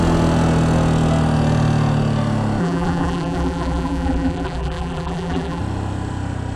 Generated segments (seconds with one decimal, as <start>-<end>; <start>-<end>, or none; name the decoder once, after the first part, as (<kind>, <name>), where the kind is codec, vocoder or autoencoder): 2.6-5.6 (vocoder, BigVGAN v2)